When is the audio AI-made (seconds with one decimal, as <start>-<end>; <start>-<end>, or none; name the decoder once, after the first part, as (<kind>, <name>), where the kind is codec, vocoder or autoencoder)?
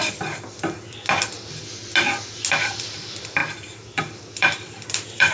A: 2.5-3.4 (vocoder, BigVGAN v2); 4.0-5.3